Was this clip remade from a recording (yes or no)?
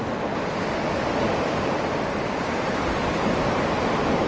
no